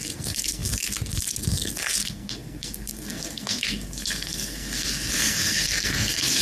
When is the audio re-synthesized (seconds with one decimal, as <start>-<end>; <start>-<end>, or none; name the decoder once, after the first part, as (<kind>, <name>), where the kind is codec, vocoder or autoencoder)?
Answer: 0.0-6.4 (codec, SNAC)